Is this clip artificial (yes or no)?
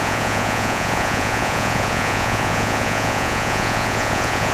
yes